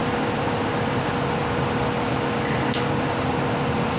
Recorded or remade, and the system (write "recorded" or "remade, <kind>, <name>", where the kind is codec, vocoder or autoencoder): recorded